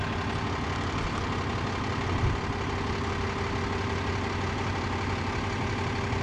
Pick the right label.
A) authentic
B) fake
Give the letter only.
A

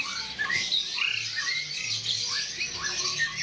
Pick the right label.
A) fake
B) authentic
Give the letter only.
B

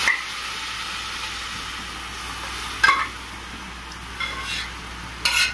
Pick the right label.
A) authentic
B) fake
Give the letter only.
A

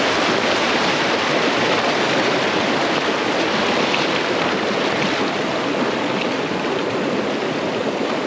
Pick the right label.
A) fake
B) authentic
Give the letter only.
B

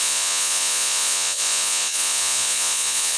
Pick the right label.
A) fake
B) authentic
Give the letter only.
A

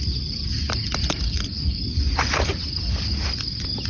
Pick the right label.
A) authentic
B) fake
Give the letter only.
A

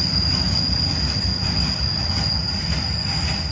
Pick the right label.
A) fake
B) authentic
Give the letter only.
B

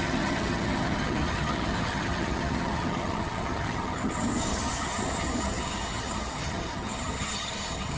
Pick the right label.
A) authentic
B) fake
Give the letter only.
B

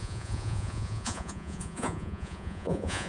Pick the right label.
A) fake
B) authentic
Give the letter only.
A